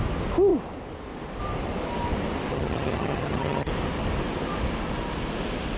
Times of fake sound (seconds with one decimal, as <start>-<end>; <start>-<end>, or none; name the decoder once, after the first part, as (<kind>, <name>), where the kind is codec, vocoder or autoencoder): 2.5-3.7 (vocoder, HiFi-GAN)